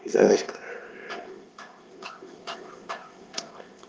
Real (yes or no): no